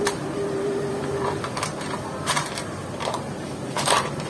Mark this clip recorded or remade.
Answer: remade